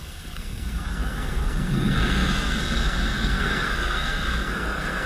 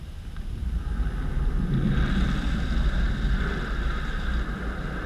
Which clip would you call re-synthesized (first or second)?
first